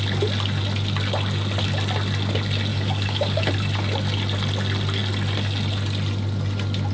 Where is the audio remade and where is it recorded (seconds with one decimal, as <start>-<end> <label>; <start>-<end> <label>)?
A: 0.0-2.7 recorded; 2.7-3.5 remade; 3.5-6.9 recorded

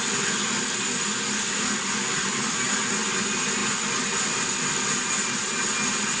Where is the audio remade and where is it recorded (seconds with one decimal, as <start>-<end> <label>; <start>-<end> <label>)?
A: 0.0-6.2 recorded

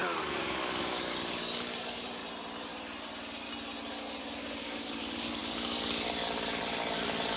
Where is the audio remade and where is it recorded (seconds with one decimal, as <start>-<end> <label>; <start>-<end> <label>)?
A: 0.0-2.2 remade; 2.2-4.2 recorded; 4.2-7.4 remade

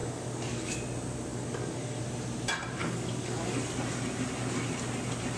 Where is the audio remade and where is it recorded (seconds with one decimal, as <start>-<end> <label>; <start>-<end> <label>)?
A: 0.0-0.8 remade; 0.8-1.3 recorded; 1.3-2.0 remade; 2.0-2.8 recorded; 2.8-3.6 remade; 3.6-5.4 recorded